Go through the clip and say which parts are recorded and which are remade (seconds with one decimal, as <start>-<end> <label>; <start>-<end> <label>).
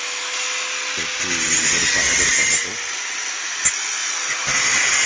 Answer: 0.0-5.1 recorded